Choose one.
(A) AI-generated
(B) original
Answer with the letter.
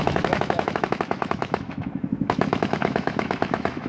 A